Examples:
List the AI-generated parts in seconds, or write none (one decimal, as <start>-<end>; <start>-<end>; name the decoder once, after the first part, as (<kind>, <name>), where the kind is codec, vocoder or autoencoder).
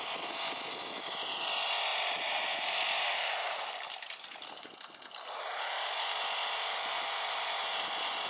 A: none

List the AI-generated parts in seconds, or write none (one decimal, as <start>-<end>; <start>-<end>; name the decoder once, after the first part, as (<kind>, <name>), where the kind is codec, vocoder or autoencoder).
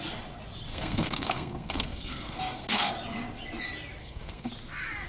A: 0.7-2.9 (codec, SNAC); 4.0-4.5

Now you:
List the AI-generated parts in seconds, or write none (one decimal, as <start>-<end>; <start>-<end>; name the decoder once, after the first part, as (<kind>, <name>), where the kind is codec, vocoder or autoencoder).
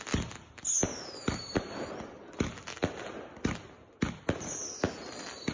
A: none